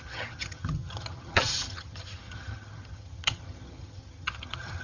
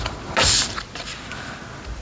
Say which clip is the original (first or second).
second